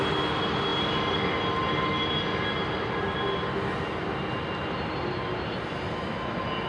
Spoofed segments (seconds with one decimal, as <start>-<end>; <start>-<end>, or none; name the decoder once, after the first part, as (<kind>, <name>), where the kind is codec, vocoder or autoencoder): none